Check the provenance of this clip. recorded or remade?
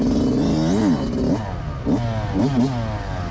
recorded